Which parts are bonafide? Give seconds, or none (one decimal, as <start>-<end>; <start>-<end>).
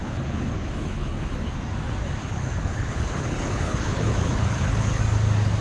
1.6-2.2; 5.0-5.6